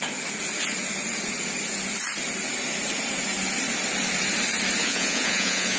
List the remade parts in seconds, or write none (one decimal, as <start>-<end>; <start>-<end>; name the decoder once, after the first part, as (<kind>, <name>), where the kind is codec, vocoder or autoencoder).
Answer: 4.8-5.8 (vocoder, Vocos)